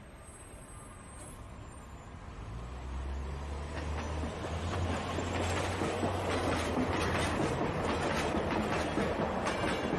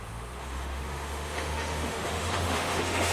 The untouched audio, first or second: first